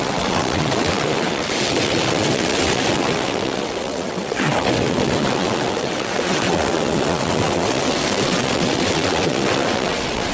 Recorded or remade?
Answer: remade